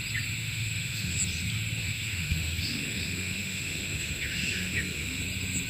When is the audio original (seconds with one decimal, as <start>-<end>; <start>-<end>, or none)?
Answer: 0.0-0.4; 1.2-1.8; 5.2-5.7